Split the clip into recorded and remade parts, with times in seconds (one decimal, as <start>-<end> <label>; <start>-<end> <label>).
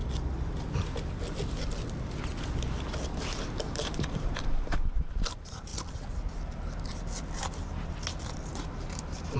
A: 0.0-3.6 recorded; 3.6-5.7 remade; 5.7-8.5 recorded; 8.5-9.4 remade